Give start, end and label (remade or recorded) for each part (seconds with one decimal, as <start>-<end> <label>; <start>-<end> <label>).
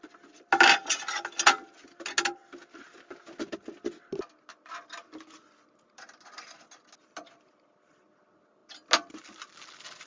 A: 0.0-10.1 recorded